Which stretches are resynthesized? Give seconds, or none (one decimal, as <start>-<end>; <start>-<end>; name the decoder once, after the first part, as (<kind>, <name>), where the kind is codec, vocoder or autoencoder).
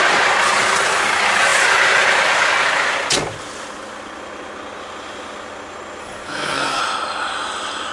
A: 6.0-6.8 (codec, SNAC)